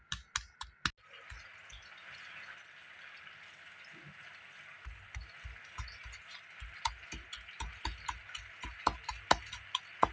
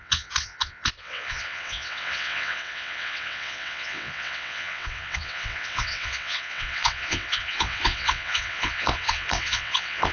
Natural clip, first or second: first